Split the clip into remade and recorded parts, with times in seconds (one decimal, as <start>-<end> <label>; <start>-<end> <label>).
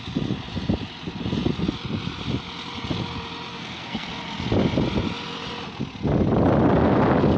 0.0-3.5 recorded; 3.5-4.1 remade; 4.1-7.4 recorded